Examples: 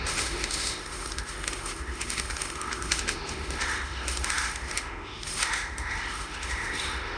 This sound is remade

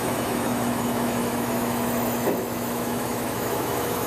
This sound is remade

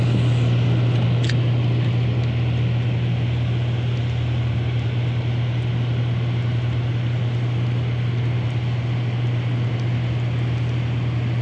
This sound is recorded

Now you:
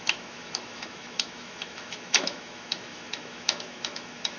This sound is remade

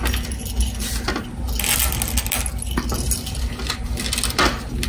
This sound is recorded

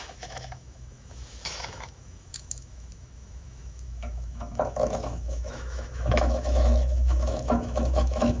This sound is remade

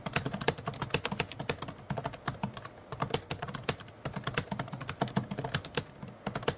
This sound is recorded